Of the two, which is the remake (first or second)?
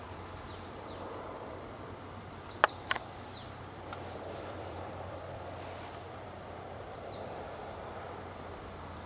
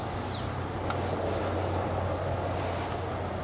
first